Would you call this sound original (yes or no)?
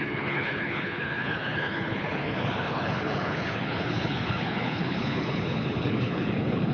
no